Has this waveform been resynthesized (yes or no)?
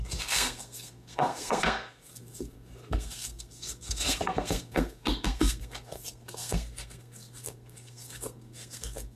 yes